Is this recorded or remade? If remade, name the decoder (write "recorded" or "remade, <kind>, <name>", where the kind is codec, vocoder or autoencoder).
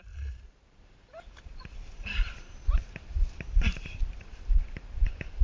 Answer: remade, vocoder, BigVGAN v2